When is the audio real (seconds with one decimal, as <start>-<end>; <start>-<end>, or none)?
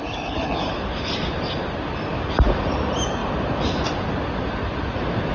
0.7-5.3